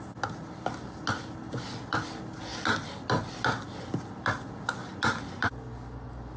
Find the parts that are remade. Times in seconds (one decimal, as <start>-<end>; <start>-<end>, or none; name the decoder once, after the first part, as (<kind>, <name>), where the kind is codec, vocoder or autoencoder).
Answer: none